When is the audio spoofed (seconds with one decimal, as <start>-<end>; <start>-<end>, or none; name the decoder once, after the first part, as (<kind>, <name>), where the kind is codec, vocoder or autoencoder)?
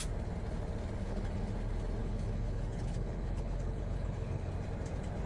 1.0-1.5 (codec, HILCodec); 2.0-4.5